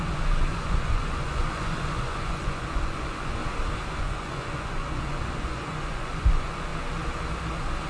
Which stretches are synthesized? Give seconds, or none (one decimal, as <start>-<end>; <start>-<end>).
0.0-3.4; 4.0-6.7